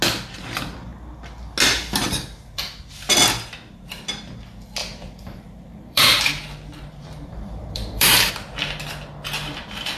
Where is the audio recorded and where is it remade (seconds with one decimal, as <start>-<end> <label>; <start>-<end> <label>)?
0.0-4.8 recorded; 4.8-8.3 remade; 8.3-10.0 recorded